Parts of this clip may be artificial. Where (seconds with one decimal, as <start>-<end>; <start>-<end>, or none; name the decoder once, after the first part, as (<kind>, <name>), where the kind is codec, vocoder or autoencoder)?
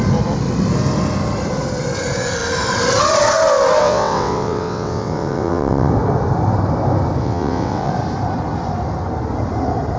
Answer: 3.8-5.9 (vocoder, WaveNeXt); 7.2-7.9